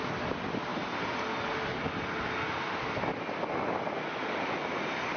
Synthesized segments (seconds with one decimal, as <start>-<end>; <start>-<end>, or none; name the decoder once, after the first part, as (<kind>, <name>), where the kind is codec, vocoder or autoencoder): none